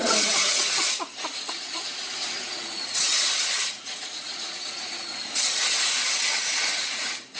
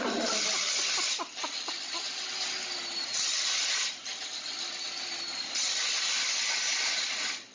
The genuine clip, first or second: second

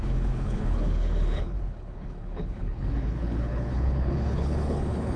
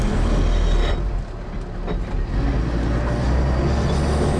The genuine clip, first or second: second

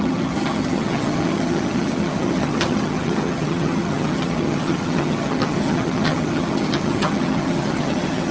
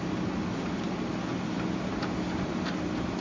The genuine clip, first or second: second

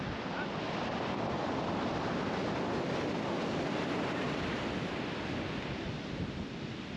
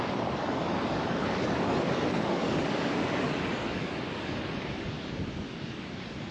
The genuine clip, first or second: first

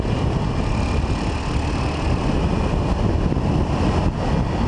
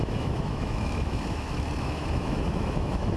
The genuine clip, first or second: first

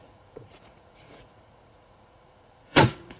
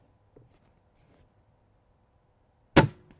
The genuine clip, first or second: second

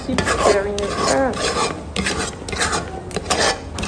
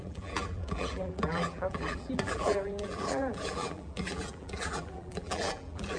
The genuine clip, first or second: first